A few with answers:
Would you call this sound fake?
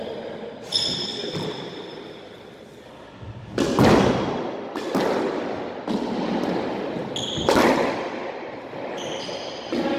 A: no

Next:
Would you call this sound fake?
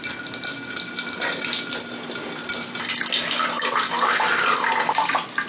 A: no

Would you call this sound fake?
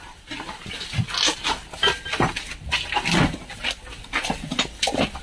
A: no